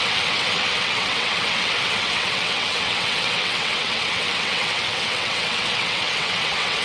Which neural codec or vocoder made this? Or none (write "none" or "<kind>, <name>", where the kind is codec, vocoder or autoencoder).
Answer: vocoder, WaveNeXt